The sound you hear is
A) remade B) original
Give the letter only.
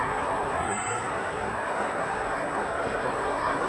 A